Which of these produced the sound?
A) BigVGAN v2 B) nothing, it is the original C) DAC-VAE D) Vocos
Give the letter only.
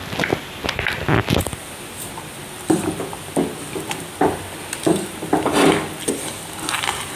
B